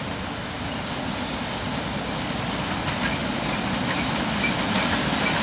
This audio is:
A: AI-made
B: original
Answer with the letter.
B